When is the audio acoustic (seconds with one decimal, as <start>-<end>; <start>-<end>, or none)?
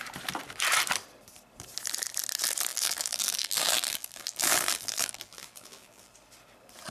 0.0-2.7; 6.1-6.9